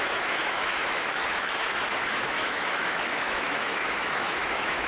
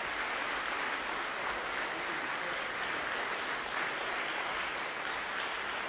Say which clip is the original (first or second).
second